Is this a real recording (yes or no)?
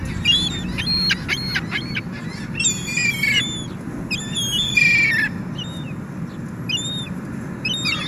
yes